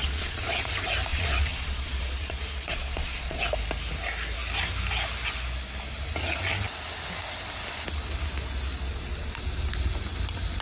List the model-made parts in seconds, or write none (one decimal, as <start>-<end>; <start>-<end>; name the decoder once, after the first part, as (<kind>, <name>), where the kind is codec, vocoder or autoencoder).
0.0-0.7 (vocoder, Vocos); 1.1-3.4